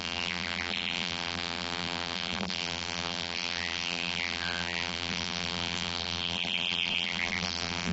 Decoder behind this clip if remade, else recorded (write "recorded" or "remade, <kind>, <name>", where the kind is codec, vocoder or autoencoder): remade, vocoder, BigVGAN v2